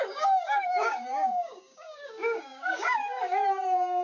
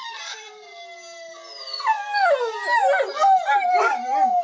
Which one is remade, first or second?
first